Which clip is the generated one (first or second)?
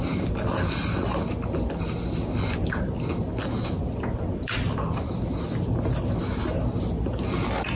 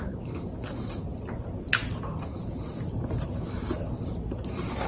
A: second